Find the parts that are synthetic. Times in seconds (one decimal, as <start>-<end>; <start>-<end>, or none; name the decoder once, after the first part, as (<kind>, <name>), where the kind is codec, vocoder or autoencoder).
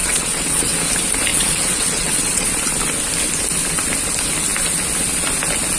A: 0.0-0.8 (vocoder, WaveNeXt); 1.3-2.5